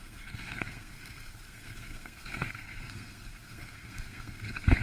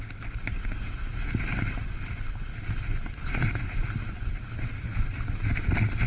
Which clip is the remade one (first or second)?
first